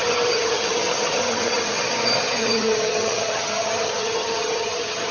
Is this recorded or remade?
remade